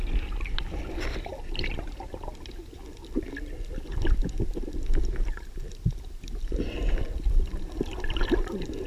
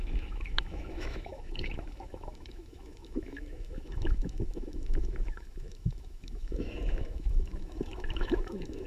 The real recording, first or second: first